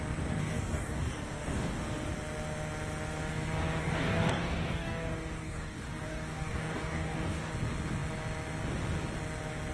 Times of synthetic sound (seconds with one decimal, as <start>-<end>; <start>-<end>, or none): 0.4-1.8; 3.8-7.5